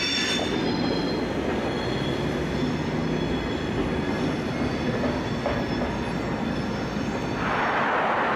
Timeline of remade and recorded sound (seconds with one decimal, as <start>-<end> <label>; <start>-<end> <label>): 0.0-8.4 recorded